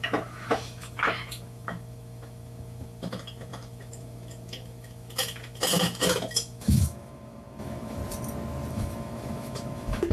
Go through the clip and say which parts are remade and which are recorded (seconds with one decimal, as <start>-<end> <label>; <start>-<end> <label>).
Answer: 0.0-8.0 remade; 8.0-8.7 recorded; 8.7-10.1 remade